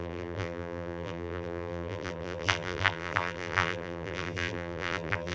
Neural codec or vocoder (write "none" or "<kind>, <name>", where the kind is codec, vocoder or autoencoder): vocoder, BigVGAN v2